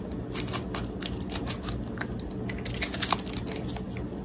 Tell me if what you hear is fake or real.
real